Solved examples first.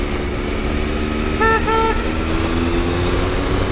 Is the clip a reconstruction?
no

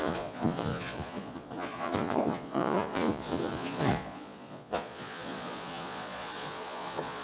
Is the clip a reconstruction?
yes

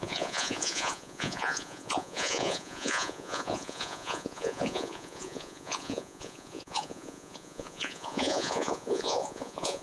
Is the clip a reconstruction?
yes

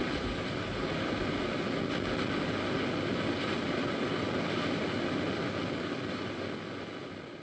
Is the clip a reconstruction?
no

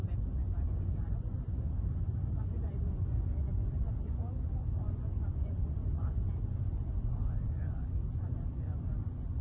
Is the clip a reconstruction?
yes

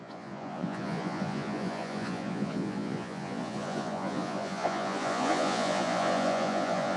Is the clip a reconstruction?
yes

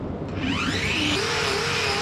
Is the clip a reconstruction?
no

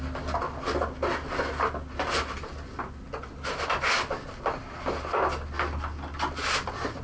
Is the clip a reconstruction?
no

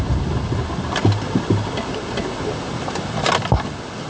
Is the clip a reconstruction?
no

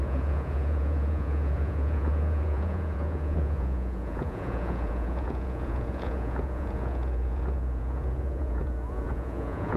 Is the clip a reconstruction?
yes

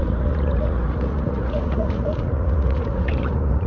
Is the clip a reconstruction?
yes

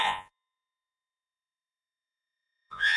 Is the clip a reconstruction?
yes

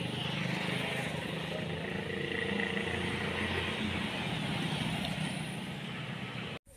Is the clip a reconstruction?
no